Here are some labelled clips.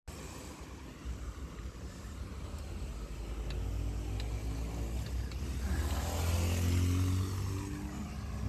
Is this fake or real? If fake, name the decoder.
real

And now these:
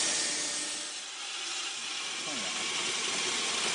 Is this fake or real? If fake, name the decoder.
real